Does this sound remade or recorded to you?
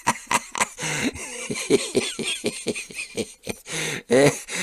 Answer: recorded